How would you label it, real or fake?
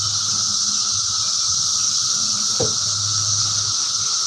real